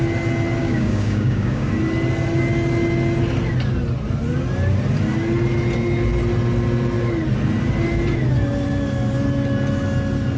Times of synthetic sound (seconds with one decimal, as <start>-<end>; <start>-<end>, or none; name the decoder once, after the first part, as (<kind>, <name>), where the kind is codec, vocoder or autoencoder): 0.6-1.7 (codec, DAC)